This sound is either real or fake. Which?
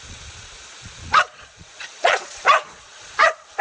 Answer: fake